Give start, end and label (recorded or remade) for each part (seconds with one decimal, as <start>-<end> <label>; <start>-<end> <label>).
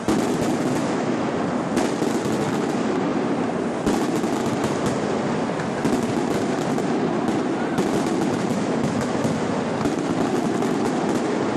0.0-0.8 recorded; 0.8-1.3 remade; 1.3-8.5 recorded; 8.5-9.1 remade; 9.1-11.6 recorded